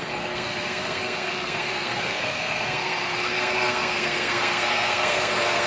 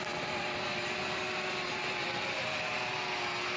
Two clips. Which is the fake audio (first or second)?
first